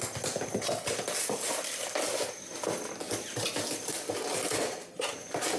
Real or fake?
real